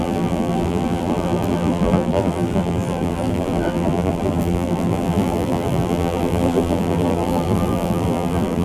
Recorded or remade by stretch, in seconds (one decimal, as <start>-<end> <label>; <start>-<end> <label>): 0.0-8.6 remade